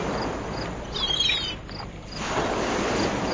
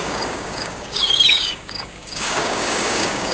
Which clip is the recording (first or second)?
first